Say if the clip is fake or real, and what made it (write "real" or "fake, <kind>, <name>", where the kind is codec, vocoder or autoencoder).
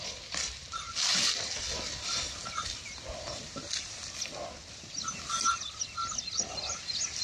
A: real